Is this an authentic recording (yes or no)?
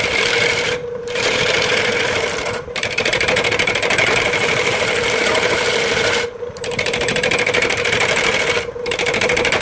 no